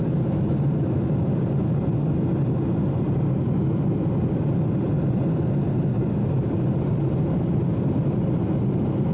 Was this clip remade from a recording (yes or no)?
no